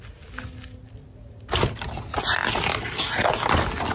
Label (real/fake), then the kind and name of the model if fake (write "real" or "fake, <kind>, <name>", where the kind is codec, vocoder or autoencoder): real